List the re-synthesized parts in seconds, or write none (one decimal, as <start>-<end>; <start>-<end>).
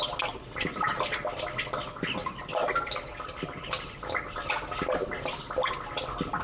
none